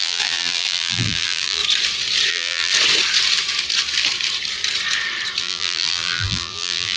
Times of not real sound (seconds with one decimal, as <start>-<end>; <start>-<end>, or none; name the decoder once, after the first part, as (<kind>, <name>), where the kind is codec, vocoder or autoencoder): 0.0-1.6 (vocoder, BigVGAN v2); 2.3-2.7; 5.4-7.0